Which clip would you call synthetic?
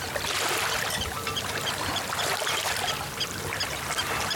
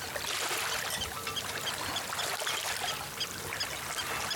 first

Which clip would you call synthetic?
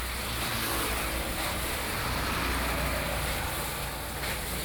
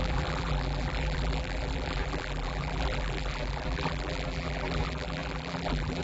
second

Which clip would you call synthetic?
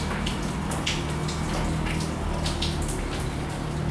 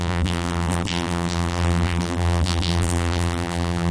second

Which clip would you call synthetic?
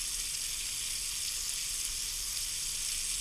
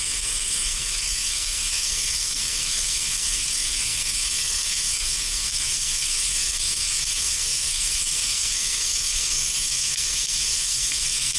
second